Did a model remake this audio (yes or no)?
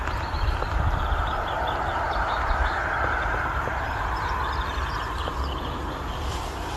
no